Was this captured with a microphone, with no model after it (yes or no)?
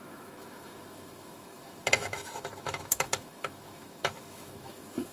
no